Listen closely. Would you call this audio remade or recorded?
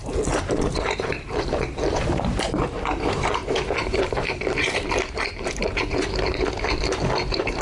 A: remade